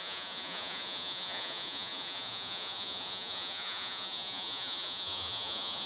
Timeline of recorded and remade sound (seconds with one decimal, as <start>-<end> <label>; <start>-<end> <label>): 0.0-5.9 remade